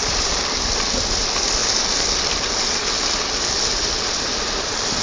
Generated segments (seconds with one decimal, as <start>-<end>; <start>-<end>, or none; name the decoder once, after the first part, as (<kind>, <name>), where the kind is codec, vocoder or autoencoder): 0.0-1.6 (vocoder, BigVGAN v2); 4.1-5.0